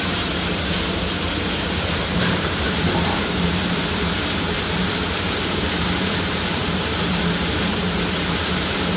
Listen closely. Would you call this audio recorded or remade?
remade